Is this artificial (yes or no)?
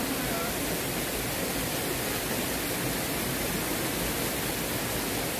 no